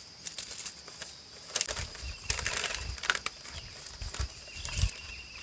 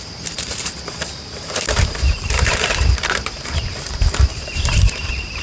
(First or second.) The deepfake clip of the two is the second